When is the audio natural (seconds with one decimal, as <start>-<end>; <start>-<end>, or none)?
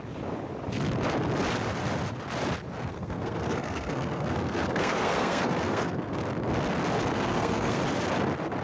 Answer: 0.0-2.9; 6.1-7.1; 7.8-8.6